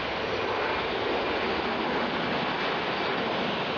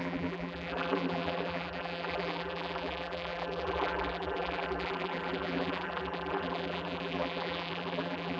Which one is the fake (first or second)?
second